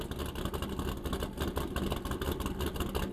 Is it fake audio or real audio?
real